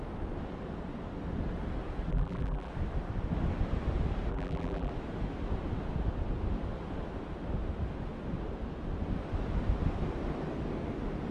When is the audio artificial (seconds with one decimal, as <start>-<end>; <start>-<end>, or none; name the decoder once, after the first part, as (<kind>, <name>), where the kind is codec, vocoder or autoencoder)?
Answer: 2.1-2.7 (vocoder, BigVGAN v2); 4.3-4.9